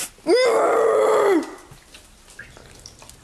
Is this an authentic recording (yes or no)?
yes